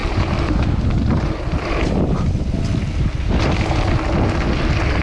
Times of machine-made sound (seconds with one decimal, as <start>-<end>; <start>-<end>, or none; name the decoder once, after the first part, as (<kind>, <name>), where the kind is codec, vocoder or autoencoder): 0.0-3.0 (vocoder, BigVGAN v2)